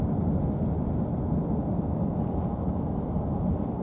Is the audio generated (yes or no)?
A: no